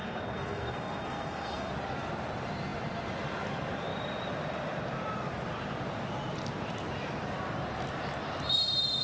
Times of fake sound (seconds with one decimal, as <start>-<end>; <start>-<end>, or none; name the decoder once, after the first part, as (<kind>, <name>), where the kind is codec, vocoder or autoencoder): 0.0-1.7 (codec, SNAC)